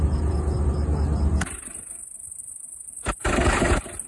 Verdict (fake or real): real